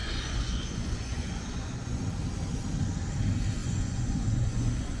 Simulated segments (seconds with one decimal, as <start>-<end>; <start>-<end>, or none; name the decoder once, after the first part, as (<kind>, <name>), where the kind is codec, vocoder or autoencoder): 0.0-2.1 (vocoder, Vocos); 3.6-5.0